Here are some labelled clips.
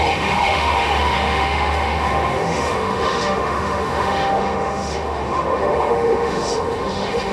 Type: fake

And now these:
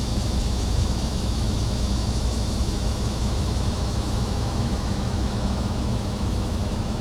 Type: fake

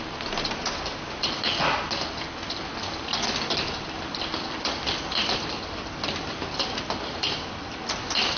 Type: real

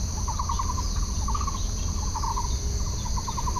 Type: real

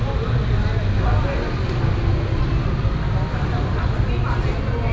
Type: real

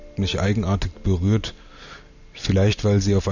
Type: real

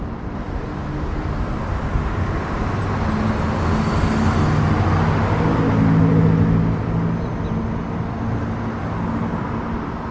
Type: real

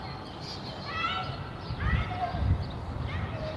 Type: real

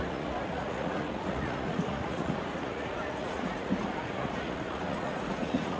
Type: fake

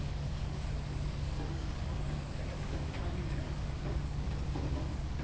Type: fake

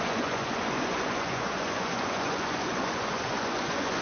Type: fake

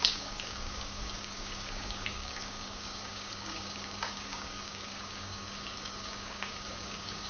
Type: fake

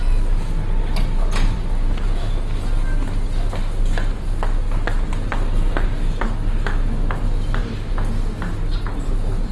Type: real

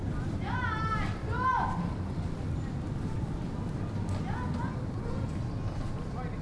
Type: real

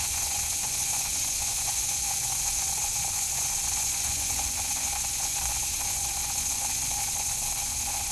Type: fake